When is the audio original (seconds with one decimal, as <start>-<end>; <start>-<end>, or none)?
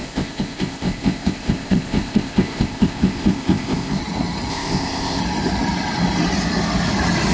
4.0-4.5; 5.2-7.3